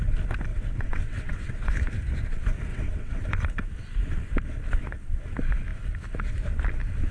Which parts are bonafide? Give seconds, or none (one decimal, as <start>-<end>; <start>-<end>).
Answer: 0.0-0.5; 1.7-2.7; 3.3-7.1